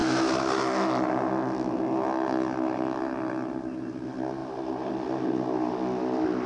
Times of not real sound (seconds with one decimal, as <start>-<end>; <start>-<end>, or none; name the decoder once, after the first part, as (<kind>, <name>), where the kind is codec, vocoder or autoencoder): 4.4-4.9 (vocoder, BigVGAN v2)